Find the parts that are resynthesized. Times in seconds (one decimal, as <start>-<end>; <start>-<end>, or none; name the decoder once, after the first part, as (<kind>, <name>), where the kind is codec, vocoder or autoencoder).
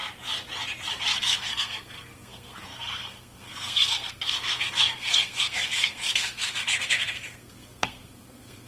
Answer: 1.0-8.7 (codec, SNAC)